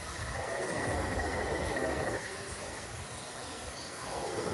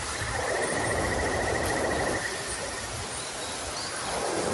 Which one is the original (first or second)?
second